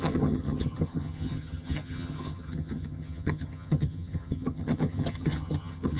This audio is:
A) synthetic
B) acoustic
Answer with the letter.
A